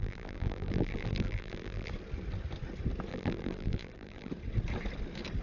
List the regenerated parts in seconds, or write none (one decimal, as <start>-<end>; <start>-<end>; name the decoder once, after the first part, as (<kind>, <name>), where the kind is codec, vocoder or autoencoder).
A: 0.0-1.9 (vocoder, BigVGAN v2); 3.1-4.3